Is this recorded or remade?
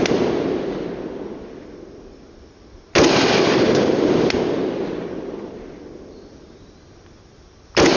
recorded